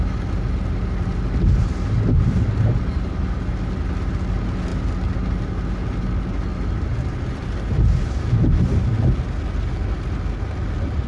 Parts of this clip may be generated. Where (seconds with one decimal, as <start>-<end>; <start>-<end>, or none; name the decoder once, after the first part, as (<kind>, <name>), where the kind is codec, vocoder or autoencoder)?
none